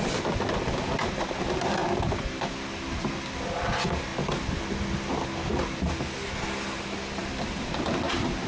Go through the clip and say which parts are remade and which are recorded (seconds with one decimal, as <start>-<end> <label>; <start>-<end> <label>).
0.0-1.8 recorded; 1.8-2.5 remade; 2.5-8.5 recorded